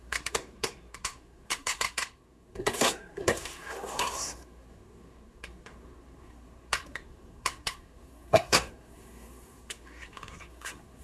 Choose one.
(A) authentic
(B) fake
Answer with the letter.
B